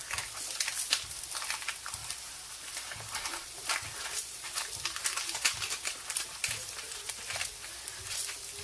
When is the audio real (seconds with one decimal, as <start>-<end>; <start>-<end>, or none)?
0.0-2.0; 7.1-8.6